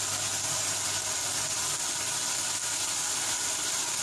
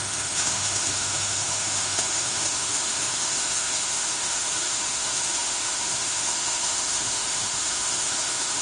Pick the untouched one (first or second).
first